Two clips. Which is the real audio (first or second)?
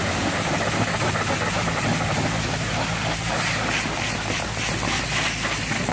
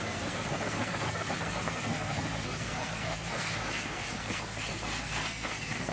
first